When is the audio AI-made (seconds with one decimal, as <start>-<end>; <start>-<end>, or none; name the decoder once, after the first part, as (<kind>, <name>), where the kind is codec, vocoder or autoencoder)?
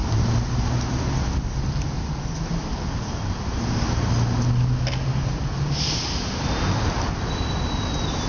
none